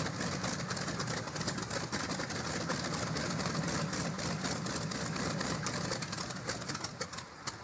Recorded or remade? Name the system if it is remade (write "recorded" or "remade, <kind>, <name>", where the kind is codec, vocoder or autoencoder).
recorded